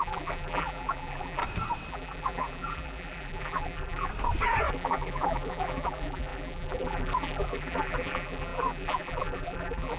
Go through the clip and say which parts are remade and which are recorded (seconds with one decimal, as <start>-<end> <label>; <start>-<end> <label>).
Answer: 0.0-1.4 remade; 1.4-1.9 recorded; 1.9-4.1 remade; 4.1-4.7 recorded; 4.7-10.0 remade